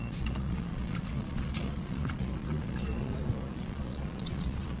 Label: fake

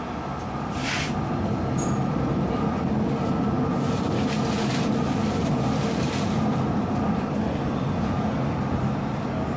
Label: real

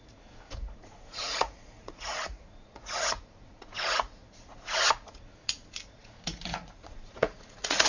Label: fake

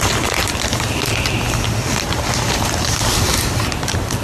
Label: real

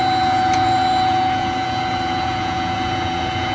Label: fake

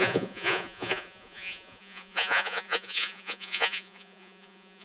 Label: fake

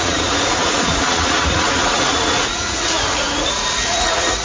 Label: fake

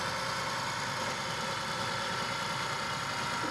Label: real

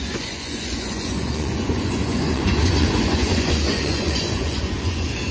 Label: fake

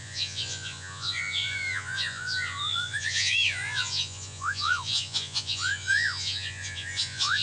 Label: fake